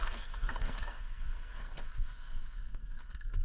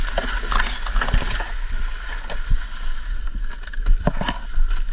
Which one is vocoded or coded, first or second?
first